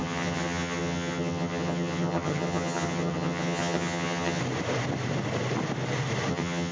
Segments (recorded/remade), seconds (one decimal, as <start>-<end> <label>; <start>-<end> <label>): 0.0-4.4 remade; 4.4-6.3 recorded; 6.3-6.7 remade